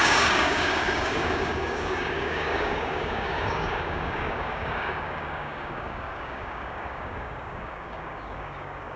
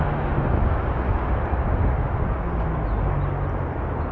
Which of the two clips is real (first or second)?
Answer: second